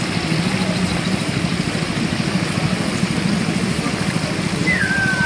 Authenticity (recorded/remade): recorded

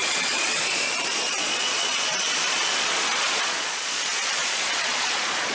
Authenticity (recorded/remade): remade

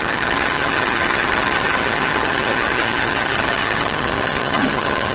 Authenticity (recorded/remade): remade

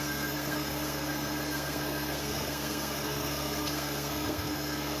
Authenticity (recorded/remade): remade